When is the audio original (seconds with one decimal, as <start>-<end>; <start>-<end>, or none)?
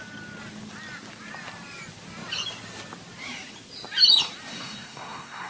0.0-4.5